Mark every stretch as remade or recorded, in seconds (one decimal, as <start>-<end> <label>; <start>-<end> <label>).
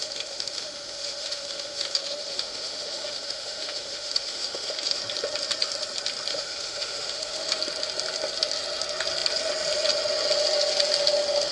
0.0-5.0 remade; 5.0-6.3 recorded; 6.3-7.6 remade; 7.6-11.5 recorded